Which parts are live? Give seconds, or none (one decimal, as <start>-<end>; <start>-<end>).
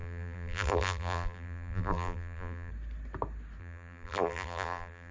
2.7-3.6